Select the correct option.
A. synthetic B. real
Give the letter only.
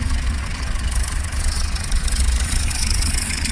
A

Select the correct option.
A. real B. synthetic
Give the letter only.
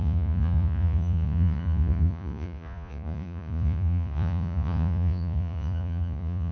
B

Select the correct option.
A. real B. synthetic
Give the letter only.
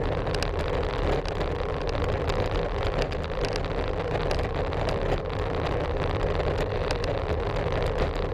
A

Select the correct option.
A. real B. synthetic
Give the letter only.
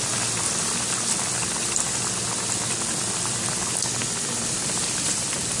A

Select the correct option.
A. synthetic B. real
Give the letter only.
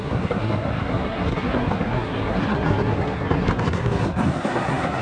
A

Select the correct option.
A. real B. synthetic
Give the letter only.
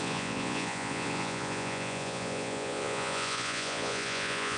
B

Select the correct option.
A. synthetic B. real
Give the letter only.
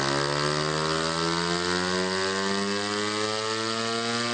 B